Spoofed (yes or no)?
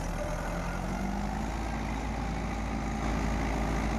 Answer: no